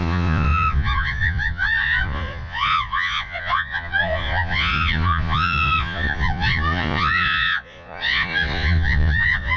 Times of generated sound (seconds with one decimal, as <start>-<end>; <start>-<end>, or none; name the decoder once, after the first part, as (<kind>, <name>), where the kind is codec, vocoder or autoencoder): 0.0-9.6 (vocoder, Vocos)